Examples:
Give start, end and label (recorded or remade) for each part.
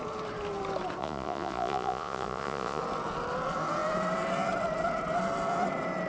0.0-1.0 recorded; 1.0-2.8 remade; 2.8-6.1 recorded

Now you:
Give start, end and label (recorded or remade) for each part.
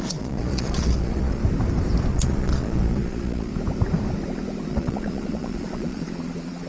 0.0-1.4 remade; 1.4-2.1 recorded; 2.1-3.5 remade; 3.5-4.7 recorded; 4.7-6.7 remade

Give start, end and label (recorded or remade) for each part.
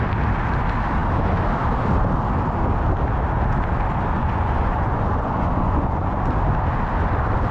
0.0-4.2 recorded; 4.2-6.2 remade; 6.2-7.5 recorded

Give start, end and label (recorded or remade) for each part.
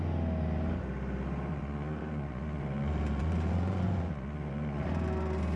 0.0-1.5 recorded; 1.5-4.9 remade; 4.9-5.6 recorded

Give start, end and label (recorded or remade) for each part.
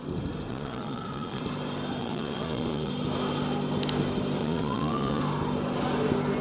0.0-0.5 recorded; 0.5-1.4 remade; 1.4-2.0 recorded; 2.0-2.9 remade; 2.9-4.4 recorded; 4.4-5.2 remade; 5.2-6.4 recorded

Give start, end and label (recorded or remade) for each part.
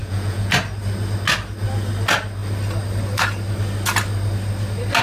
0.0-0.5 remade; 0.5-5.0 recorded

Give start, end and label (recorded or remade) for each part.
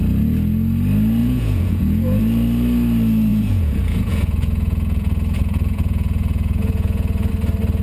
0.0-1.2 recorded; 1.2-2.2 remade; 2.2-3.3 recorded; 3.3-7.3 remade; 7.3-7.8 recorded